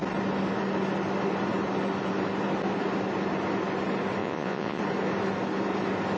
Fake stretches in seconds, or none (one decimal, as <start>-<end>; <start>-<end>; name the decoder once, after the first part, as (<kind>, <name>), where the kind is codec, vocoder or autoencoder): 4.2-4.8 (vocoder, Vocos)